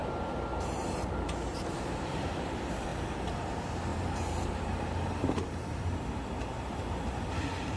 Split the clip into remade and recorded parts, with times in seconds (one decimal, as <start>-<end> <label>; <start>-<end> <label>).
0.0-0.8 recorded; 0.8-2.9 remade; 2.9-3.5 recorded; 3.5-7.8 remade